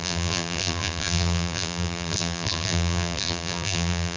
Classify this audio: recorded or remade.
remade